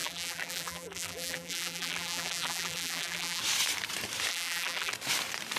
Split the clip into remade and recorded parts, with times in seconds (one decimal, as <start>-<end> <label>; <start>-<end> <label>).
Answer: 0.0-3.4 remade; 3.4-4.3 recorded; 4.3-4.9 remade; 4.9-5.6 recorded